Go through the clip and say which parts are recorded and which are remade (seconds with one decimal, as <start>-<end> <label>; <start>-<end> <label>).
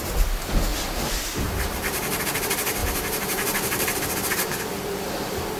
0.0-0.7 recorded; 0.7-2.2 remade; 2.2-2.8 recorded; 2.8-5.6 remade